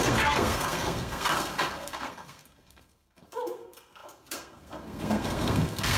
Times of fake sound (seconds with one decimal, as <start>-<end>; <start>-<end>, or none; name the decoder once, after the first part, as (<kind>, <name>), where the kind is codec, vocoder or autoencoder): 0.0-6.0 (codec, SNAC)